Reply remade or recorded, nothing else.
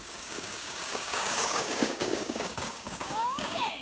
remade